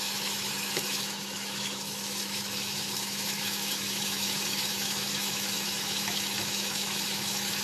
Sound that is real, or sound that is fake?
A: fake